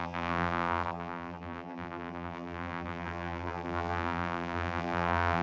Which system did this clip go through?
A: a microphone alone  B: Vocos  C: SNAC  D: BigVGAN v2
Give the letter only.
D